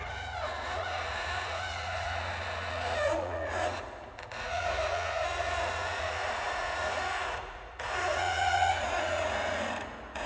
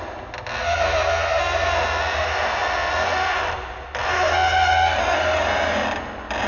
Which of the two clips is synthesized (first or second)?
first